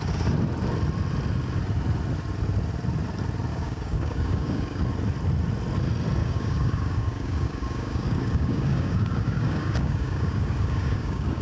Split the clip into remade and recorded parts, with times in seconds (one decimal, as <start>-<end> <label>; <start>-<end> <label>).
0.0-3.5 recorded; 3.5-4.8 remade; 4.8-6.2 recorded; 6.2-11.4 remade